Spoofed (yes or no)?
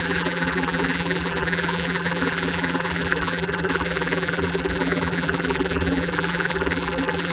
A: yes